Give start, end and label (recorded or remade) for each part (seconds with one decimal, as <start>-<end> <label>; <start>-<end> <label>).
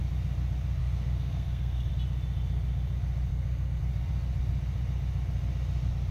0.0-0.8 recorded; 0.8-1.9 remade; 1.9-3.3 recorded; 3.3-3.8 remade; 3.8-6.1 recorded